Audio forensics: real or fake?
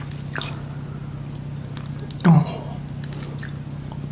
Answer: real